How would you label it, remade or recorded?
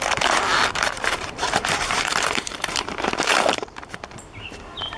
remade